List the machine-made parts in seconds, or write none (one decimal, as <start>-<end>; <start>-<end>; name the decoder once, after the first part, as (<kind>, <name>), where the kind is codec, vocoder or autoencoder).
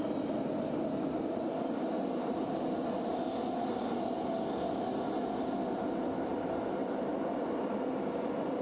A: none